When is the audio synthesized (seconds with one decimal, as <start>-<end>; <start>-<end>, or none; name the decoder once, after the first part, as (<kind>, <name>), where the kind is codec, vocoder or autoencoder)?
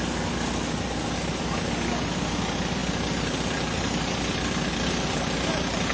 none